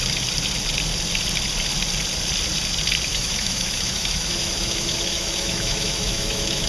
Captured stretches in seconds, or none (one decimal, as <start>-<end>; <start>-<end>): 0.0-3.1